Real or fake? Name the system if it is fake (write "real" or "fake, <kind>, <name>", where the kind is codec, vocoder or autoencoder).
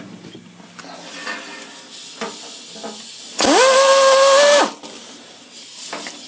real